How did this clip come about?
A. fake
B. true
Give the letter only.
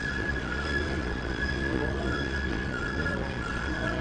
A